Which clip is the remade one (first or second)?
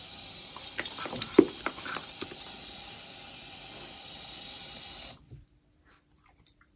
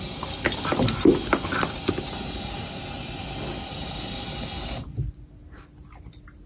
first